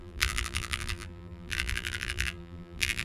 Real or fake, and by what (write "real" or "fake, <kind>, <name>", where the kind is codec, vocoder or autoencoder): fake, vocoder, BigVGAN v2